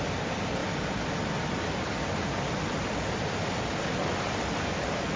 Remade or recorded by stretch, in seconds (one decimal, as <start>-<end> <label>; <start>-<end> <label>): 0.0-4.0 recorded; 4.0-4.8 remade; 4.8-5.2 recorded